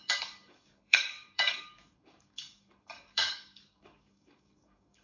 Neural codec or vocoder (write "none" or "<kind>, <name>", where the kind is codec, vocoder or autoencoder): codec, DAC